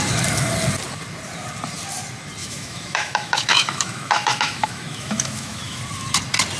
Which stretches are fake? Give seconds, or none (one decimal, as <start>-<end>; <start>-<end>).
2.4-5.8